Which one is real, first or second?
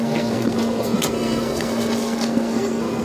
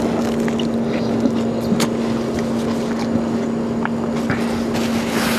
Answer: second